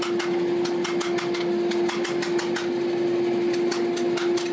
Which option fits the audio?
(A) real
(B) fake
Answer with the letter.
A